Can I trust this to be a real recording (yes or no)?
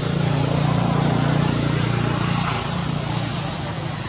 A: yes